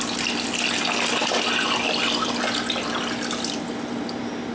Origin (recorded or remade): recorded